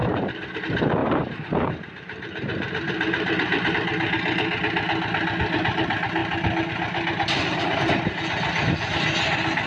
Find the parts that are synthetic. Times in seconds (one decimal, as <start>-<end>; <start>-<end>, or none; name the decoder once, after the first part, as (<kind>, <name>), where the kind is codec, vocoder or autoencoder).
0.0-0.6 (vocoder, BigVGAN v2); 1.0-3.7; 6.2-7.8